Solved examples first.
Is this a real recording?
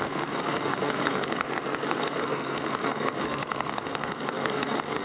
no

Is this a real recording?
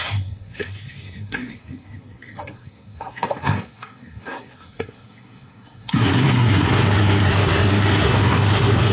no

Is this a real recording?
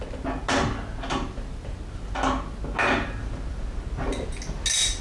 yes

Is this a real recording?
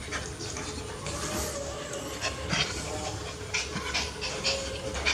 yes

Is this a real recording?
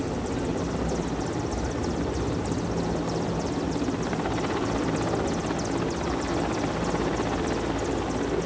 yes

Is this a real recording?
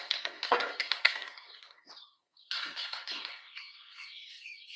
no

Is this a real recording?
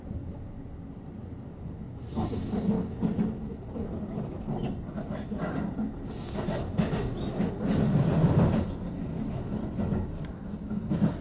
yes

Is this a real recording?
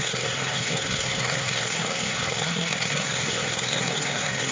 no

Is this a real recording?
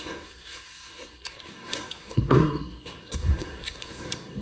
no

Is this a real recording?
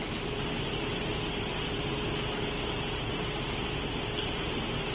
yes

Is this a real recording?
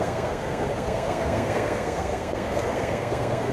no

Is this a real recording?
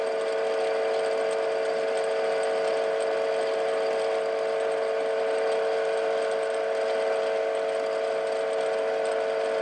yes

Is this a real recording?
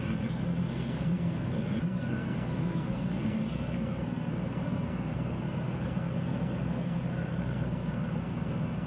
no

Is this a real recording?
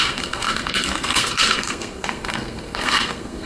no